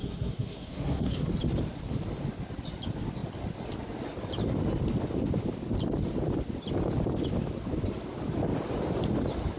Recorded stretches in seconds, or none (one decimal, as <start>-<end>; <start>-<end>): 1.3-9.6